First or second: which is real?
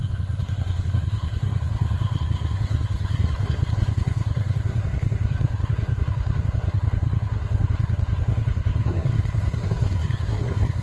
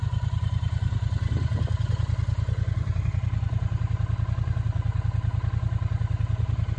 second